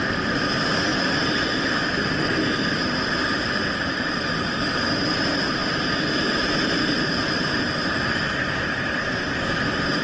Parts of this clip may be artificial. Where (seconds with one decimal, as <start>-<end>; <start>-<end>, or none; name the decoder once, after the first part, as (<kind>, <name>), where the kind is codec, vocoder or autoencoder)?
0.9-2.5 (vocoder, BigVGAN v2)